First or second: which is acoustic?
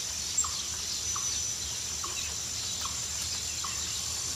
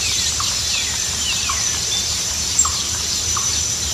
first